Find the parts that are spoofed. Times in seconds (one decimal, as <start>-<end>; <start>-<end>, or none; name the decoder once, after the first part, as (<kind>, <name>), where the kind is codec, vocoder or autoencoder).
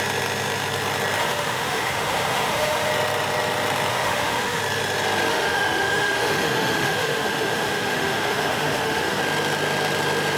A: 1.2-2.9 (autoencoder, DAC-VAE); 3.9-4.6; 5.3-9.2